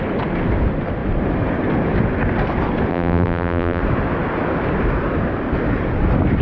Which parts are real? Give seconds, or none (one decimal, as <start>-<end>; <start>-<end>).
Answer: 0.0-2.9; 3.8-6.4